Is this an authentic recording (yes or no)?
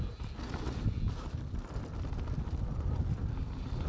yes